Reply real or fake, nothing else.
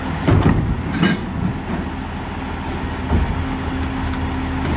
real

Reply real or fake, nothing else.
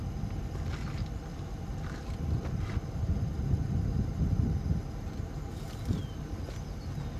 real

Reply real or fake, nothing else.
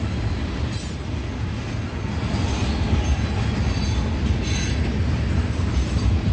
real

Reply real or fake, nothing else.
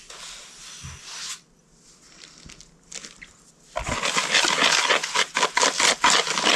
real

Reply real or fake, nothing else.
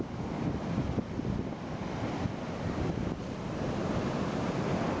fake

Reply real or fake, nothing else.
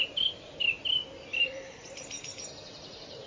fake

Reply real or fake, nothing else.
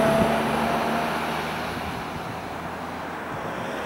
real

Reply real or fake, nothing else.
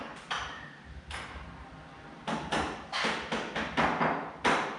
real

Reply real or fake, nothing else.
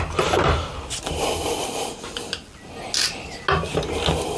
real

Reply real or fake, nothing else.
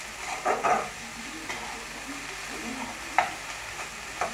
real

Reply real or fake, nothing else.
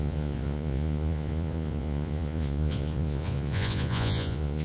fake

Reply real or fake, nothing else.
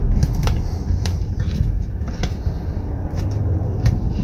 real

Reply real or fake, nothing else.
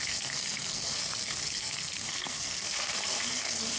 fake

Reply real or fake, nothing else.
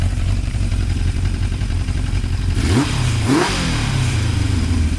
fake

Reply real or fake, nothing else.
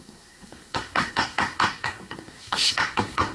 fake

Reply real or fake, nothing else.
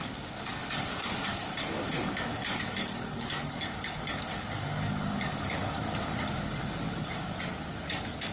fake